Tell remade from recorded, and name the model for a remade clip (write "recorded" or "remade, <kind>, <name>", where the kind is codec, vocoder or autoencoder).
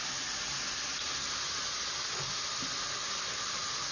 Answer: recorded